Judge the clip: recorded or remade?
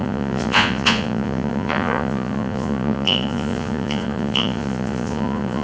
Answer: remade